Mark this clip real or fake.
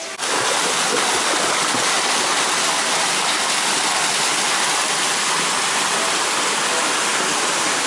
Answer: real